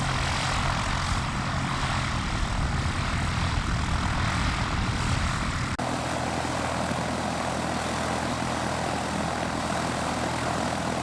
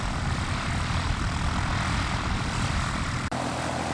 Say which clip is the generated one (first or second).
second